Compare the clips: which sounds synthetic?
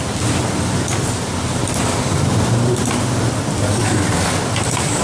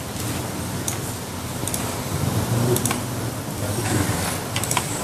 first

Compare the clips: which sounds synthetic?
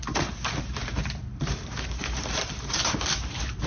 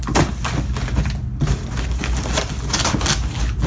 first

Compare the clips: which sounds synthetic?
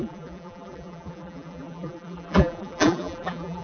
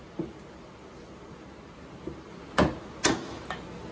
first